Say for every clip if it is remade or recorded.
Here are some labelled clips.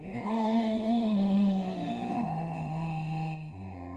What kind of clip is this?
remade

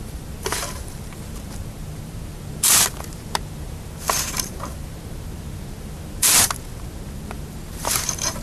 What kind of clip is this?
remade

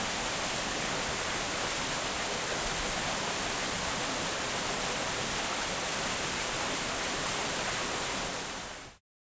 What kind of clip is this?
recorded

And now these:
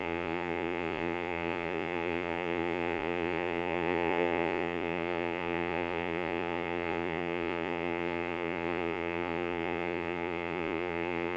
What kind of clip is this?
remade